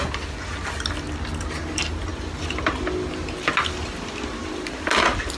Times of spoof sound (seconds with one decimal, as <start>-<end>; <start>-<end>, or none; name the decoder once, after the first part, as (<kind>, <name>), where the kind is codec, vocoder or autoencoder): none